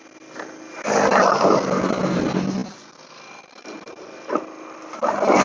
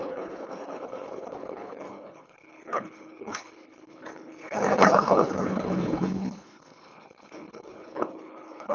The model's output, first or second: second